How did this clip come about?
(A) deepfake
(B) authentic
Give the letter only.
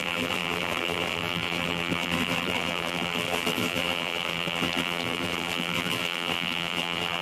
A